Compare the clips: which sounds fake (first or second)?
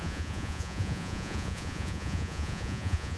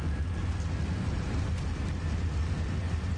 first